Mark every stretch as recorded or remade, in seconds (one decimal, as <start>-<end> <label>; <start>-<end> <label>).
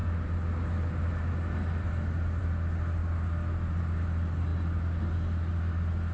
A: 0.0-6.1 recorded